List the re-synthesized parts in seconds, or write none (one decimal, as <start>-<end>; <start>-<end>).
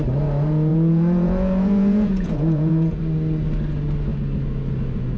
0.7-3.0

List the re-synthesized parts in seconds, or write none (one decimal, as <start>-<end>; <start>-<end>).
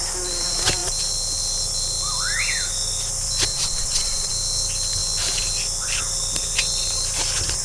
3.5-4.3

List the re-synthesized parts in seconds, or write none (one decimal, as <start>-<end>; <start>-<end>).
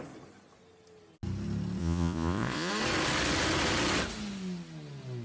1.8-2.7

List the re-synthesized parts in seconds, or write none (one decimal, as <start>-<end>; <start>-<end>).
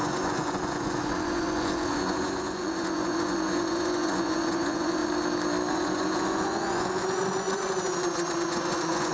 0.0-5.0; 5.7-9.1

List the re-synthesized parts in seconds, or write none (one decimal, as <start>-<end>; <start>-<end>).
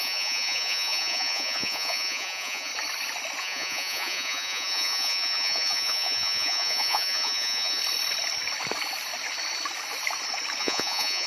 0.0-2.7; 3.4-7.8; 10.6-11.3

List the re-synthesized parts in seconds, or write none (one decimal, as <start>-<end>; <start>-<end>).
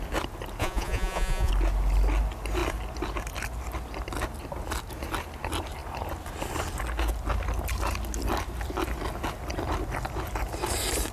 0.6-1.5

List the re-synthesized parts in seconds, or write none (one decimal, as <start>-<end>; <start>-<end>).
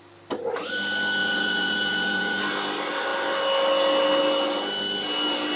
1.2-2.4